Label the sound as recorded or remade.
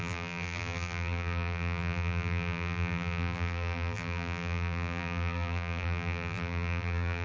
remade